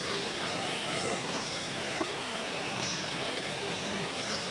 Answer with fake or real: fake